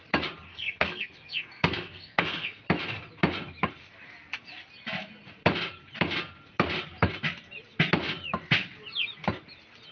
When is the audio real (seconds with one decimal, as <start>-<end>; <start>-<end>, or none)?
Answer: 0.0-0.5; 2.6-9.9